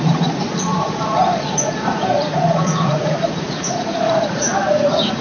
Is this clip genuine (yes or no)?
no